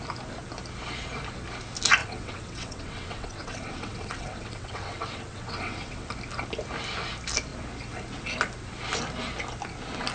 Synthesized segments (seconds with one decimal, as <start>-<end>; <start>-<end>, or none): 2.0-6.1